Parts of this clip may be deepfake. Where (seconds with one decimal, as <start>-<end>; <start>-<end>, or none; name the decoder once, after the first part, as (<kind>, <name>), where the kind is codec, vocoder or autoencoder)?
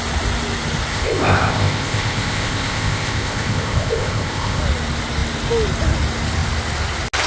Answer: 0.9-4.6 (codec, ZipCodec)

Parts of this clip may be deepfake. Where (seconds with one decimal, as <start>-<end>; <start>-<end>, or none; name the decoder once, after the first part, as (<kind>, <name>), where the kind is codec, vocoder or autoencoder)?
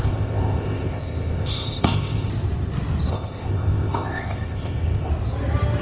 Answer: 0.0-2.3 (codec, ZipCodec); 3.1-5.1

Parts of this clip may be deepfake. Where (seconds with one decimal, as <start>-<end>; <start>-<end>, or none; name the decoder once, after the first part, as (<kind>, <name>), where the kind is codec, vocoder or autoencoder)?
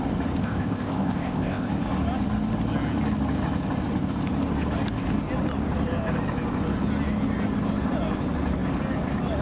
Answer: 0.4-1.7 (codec, ZipCodec)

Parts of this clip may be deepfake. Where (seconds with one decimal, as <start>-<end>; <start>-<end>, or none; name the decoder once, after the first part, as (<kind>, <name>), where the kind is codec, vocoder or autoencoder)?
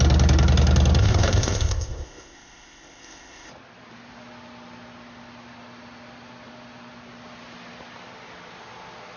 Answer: 1.0-3.5 (codec, ZipCodec)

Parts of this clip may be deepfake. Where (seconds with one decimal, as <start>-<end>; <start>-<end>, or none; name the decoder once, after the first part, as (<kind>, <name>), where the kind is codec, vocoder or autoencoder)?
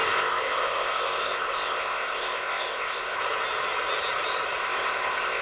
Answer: 0.0-3.2 (codec, ZipCodec); 4.6-5.4